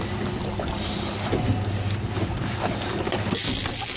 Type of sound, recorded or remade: recorded